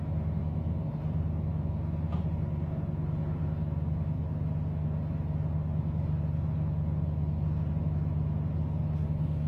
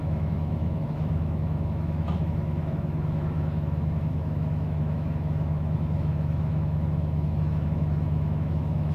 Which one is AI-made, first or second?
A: second